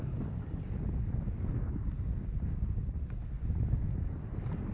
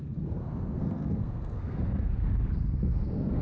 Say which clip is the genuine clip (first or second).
first